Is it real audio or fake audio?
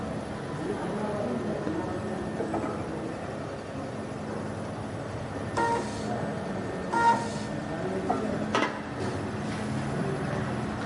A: real